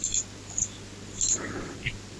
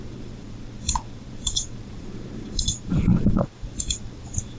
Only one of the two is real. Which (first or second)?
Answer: first